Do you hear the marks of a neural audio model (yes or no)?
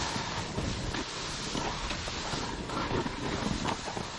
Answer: no